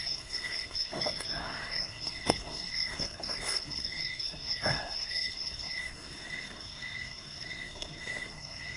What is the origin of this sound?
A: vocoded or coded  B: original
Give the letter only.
A